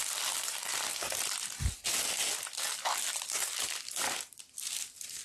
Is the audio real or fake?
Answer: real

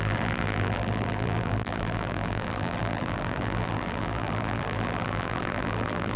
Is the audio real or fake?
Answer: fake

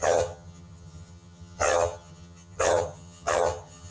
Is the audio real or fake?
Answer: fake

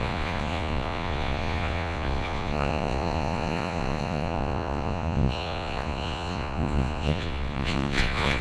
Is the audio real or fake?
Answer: fake